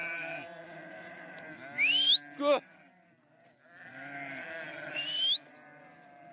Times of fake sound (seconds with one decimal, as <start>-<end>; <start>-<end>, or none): 0.0-1.4